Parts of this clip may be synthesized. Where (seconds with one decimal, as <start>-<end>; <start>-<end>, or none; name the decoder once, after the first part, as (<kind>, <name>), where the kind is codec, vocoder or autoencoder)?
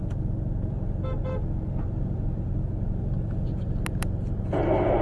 none